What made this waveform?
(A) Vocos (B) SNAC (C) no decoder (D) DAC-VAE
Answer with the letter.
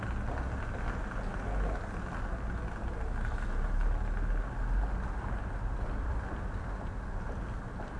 C